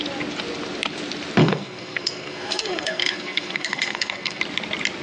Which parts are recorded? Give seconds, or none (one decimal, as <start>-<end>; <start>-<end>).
0.0-1.4; 4.4-5.0